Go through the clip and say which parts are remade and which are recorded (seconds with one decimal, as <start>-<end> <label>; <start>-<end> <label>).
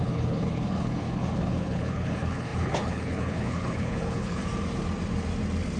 0.0-4.4 remade; 4.4-5.8 recorded